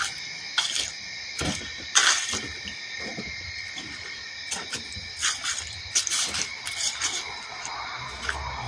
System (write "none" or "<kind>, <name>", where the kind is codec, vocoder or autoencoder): vocoder, BigVGAN v2